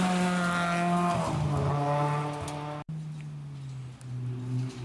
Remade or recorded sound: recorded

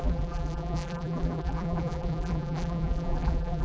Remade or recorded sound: remade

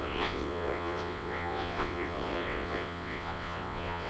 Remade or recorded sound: remade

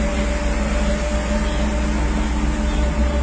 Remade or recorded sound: recorded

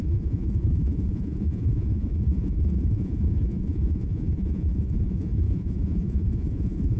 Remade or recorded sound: remade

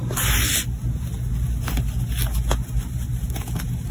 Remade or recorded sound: recorded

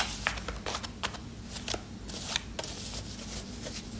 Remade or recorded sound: recorded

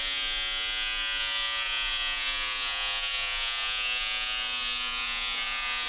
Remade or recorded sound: remade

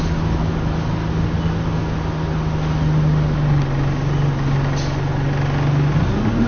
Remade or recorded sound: recorded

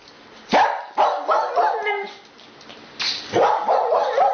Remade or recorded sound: recorded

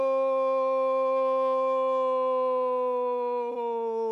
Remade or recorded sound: recorded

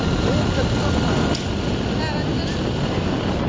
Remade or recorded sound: recorded